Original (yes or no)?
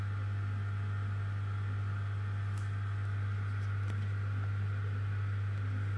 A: yes